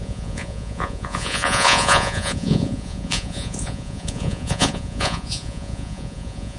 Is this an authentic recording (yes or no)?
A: no